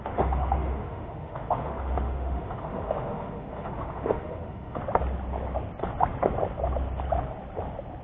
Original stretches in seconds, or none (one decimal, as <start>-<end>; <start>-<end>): 4.8-8.0